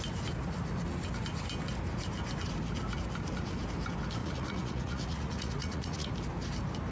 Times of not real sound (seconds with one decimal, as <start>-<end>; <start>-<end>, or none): 4.2-6.1

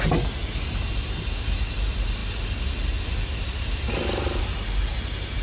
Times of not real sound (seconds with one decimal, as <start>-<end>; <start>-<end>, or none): none

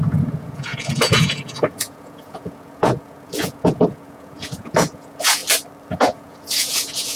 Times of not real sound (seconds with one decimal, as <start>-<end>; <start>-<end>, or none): 0.0-5.4; 5.9-7.2

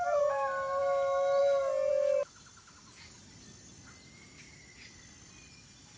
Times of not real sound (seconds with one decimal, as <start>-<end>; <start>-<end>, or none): none